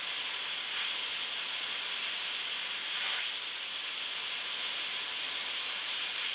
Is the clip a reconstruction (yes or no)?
no